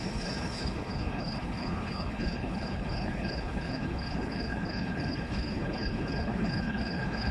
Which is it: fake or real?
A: fake